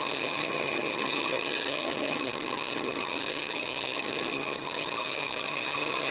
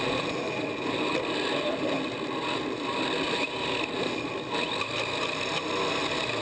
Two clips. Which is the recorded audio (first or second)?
second